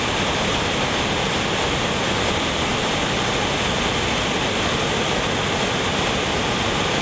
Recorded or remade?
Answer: recorded